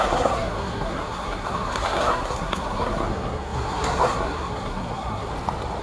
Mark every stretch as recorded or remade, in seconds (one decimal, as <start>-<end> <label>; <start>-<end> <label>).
0.0-5.3 remade; 5.3-5.8 recorded